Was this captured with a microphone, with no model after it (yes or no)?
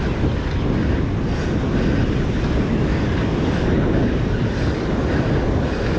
yes